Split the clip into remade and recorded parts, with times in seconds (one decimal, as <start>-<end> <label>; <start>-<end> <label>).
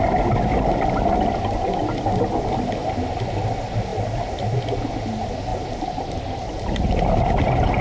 0.0-7.8 recorded